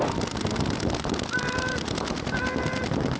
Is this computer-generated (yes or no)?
no